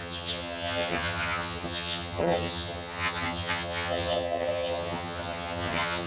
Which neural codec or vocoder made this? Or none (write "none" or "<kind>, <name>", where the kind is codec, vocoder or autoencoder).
vocoder, HiFi-GAN